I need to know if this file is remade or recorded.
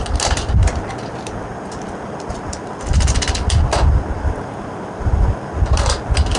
recorded